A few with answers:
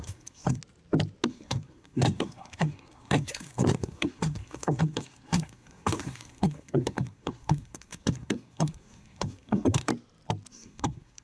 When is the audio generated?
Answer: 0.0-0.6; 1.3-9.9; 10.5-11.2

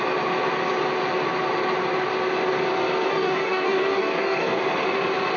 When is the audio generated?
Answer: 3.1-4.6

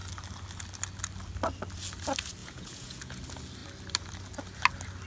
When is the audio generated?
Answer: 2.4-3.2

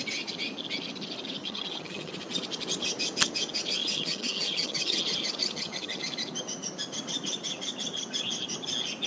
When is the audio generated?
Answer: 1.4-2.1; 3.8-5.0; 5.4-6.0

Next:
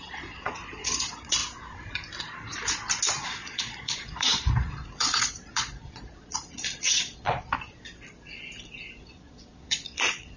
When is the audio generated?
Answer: 0.0-1.4; 3.1-7.5; 9.0-10.4

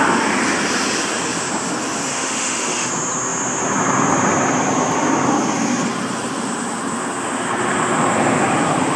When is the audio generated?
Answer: 2.1-2.9

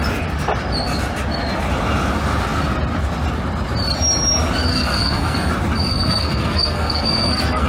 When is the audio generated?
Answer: 4.7-5.5; 5.9-7.7